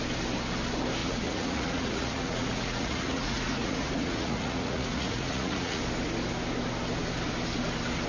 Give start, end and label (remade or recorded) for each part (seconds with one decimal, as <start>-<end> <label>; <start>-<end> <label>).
0.0-1.0 recorded; 1.0-5.8 remade; 5.8-8.1 recorded